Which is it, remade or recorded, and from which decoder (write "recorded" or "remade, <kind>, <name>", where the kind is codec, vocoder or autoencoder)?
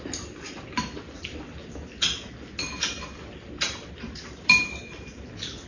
recorded